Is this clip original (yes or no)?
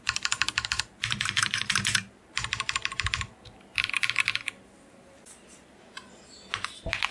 no